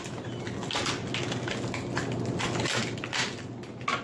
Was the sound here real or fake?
real